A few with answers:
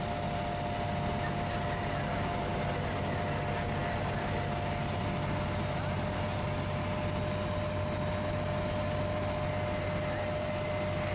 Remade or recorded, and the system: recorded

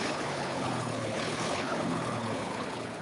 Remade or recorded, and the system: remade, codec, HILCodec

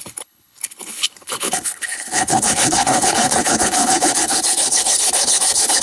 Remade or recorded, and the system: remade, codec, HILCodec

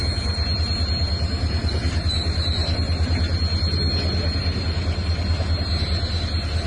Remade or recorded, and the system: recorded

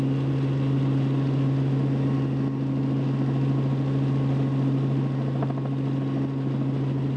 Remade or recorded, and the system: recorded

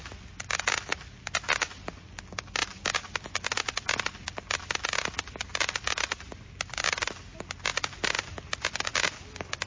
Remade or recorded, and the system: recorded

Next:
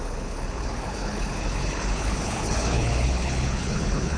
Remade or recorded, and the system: remade, codec, HILCodec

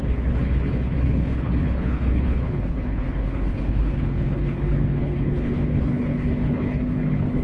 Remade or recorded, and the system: remade, codec, HILCodec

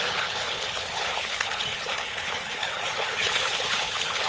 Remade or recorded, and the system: remade, codec, HILCodec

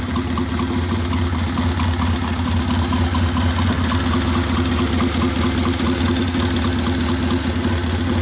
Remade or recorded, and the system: recorded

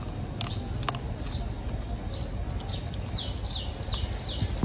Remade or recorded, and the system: recorded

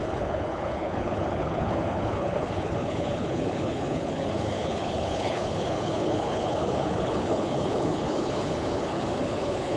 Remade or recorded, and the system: remade, codec, HILCodec